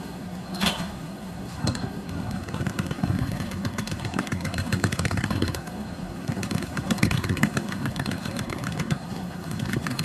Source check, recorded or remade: remade